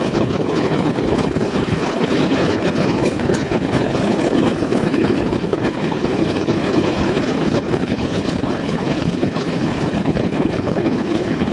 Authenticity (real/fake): fake